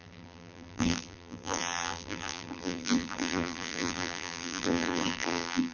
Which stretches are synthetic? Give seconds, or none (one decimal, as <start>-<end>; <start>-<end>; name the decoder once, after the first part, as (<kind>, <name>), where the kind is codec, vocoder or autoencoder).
0.0-5.7 (vocoder, BigVGAN v2)